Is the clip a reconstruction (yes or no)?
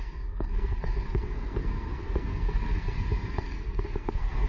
yes